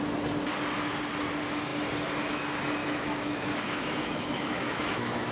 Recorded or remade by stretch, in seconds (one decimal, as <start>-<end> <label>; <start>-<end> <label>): 0.0-2.8 recorded; 2.8-5.3 remade